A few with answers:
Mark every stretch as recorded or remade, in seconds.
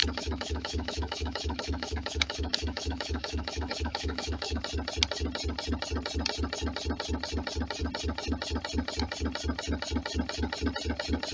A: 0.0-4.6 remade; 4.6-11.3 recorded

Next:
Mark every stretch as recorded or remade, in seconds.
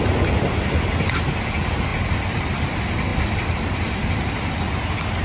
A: 0.0-5.2 recorded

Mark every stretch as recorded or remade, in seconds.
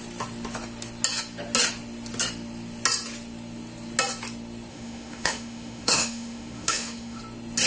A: 0.0-4.7 recorded; 4.7-7.2 remade; 7.2-7.7 recorded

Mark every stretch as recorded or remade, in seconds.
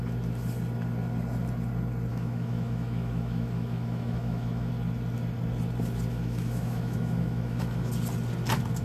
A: 0.0-2.1 recorded; 2.1-4.7 remade; 4.7-6.1 recorded; 6.1-7.9 remade; 7.9-8.8 recorded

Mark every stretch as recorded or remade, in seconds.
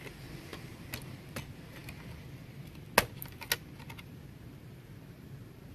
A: 0.0-5.7 recorded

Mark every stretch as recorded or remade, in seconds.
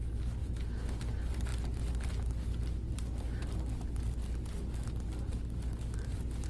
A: 0.0-0.4 recorded; 0.4-1.0 remade; 1.0-6.5 recorded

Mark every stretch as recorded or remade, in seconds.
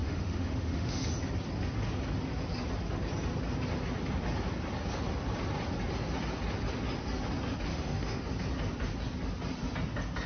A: 0.0-1.1 remade; 1.1-7.7 recorded; 7.7-8.2 remade; 8.2-10.3 recorded